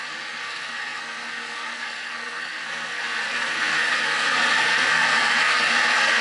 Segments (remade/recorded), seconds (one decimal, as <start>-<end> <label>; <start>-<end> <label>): 0.0-6.2 remade